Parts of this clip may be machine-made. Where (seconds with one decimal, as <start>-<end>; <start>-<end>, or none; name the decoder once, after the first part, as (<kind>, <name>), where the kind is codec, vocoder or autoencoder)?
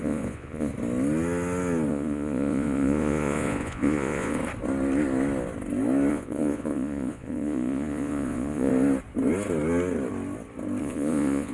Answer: 0.0-0.7 (vocoder, Vocos); 1.9-4.4; 6.1-8.7; 10.8-11.5